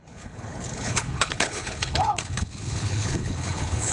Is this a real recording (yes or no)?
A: no